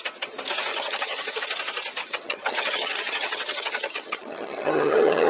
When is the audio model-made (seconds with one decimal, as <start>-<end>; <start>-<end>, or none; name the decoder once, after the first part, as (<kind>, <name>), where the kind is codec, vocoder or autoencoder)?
0.7-1.4 (vocoder, HiFi-GAN); 2.0-5.3

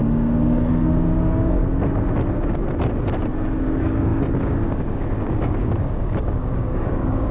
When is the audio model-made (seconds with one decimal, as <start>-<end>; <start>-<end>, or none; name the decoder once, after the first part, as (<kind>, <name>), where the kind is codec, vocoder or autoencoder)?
0.0-1.6 (codec, DAC); 3.6-7.3

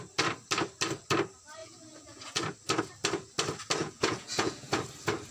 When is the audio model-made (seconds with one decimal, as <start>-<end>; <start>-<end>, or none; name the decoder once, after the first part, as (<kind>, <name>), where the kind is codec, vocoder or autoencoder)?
1.6-2.4 (vocoder, Vocos); 3.8-4.8

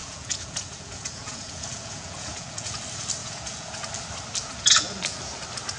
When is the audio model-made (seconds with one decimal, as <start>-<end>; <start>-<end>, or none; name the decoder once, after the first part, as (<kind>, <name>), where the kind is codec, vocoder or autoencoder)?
0.0-2.8 (vocoder, Vocos); 3.2-3.9; 4.4-5.2

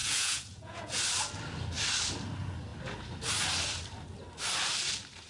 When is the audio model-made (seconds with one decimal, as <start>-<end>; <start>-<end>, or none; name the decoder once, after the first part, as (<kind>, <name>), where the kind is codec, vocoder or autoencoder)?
0.0-1.0 (vocoder, Vocos)